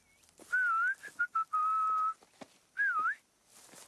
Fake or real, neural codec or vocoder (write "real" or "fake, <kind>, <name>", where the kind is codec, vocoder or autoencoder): real